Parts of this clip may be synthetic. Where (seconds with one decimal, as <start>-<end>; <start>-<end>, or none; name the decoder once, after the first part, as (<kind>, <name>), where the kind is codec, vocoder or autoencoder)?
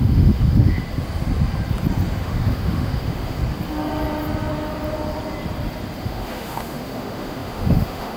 0.0-0.8 (autoencoder, DAC-VAE); 2.2-3.4; 6.0-8.2